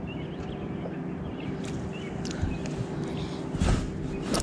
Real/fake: real